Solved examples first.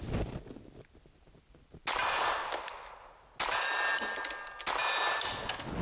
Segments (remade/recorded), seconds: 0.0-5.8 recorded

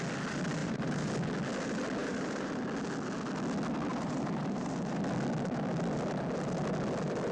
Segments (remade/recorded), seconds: 0.0-0.6 recorded; 0.6-1.1 remade; 1.1-2.0 recorded; 2.0-2.6 remade; 2.6-3.9 recorded; 3.9-5.0 remade; 5.0-7.3 recorded

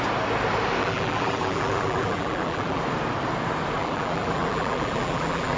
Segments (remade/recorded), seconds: 0.0-0.8 recorded; 0.8-2.8 remade; 2.8-3.8 recorded; 3.8-5.6 remade

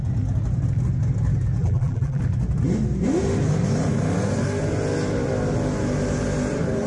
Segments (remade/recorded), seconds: 0.0-1.6 recorded; 1.6-2.2 remade; 2.2-6.9 recorded

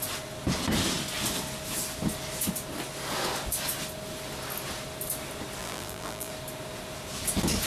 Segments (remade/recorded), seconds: 0.0-5.6 recorded; 5.6-6.3 remade; 6.3-7.7 recorded